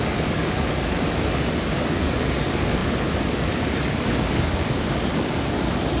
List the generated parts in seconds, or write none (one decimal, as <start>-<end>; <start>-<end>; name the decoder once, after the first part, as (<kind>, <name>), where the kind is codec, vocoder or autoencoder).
0.0-6.0 (codec, DAC)